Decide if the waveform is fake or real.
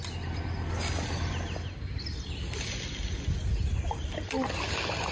real